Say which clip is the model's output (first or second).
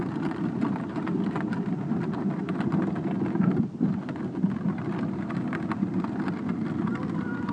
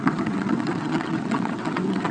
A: second